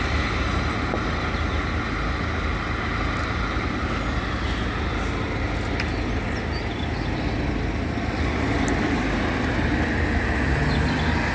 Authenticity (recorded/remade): recorded